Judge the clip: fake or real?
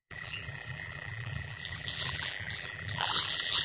fake